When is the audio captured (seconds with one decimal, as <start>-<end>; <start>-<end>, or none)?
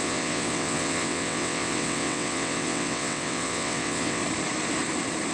4.2-5.3